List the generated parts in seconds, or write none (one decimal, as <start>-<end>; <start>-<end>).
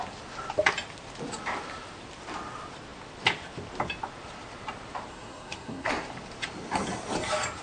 5.1-5.9